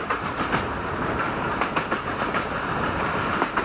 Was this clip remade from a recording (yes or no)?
yes